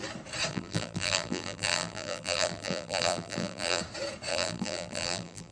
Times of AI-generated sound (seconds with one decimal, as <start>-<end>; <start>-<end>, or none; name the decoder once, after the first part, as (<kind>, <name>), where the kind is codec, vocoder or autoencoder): 0.5-3.8 (vocoder, BigVGAN v2); 4.3-5.5